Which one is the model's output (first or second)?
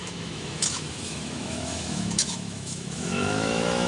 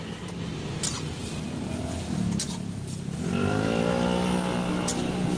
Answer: first